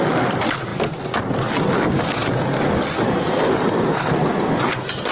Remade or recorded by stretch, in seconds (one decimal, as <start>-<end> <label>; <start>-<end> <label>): 0.0-5.1 recorded